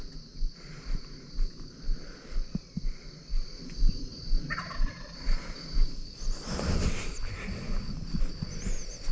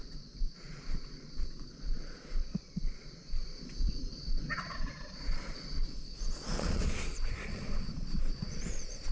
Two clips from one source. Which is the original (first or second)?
first